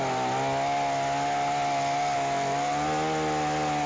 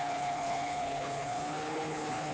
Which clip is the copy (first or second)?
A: second